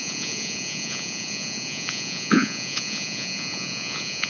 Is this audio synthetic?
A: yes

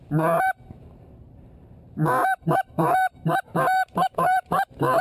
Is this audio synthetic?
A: yes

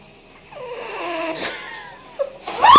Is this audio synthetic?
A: no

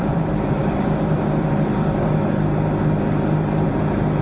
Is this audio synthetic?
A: yes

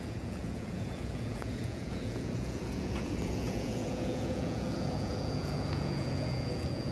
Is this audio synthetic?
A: yes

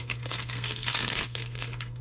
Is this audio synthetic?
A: yes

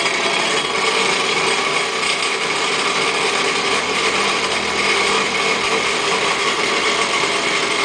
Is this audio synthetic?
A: no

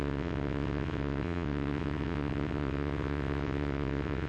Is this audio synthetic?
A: yes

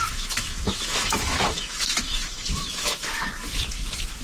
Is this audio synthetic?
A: yes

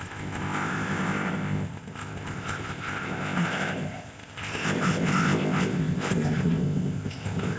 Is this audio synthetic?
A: yes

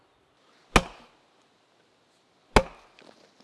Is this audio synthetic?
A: no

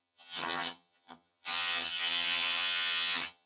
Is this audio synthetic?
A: yes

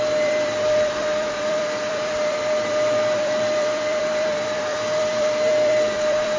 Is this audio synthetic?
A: yes